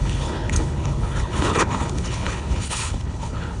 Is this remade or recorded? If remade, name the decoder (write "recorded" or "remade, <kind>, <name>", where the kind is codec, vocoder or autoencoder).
remade, codec, HILCodec